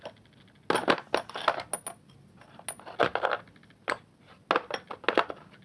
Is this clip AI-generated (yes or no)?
no